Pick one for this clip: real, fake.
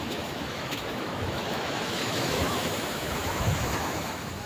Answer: fake